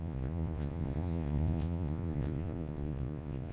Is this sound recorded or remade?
remade